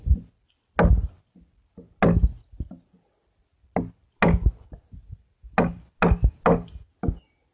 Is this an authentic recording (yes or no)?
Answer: yes